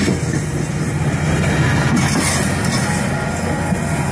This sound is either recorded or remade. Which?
recorded